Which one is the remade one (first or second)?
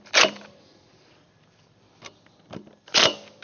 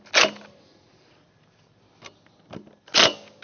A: first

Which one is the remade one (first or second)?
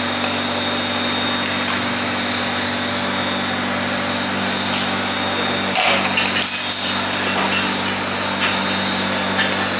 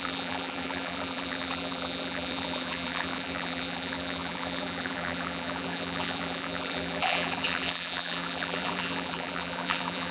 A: second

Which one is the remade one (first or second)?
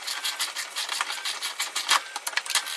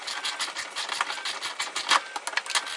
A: first